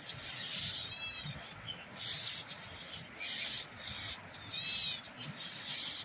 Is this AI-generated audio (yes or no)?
no